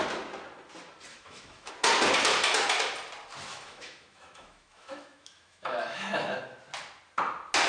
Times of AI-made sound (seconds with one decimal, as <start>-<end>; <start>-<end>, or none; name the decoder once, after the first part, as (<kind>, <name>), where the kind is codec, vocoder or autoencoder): 1.1-1.7 (autoencoder, DAC-VAE); 3.5-6.4